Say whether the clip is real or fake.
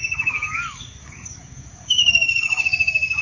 fake